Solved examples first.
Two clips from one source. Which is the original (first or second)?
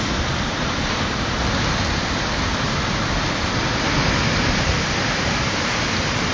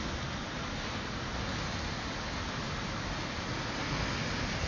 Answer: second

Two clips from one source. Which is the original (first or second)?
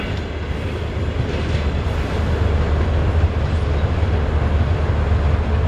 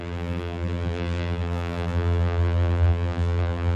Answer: first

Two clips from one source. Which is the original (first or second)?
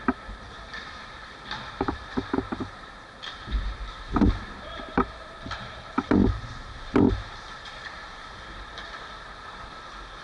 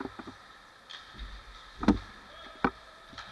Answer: second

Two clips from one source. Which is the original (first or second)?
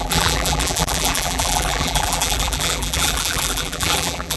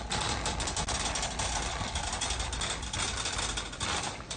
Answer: second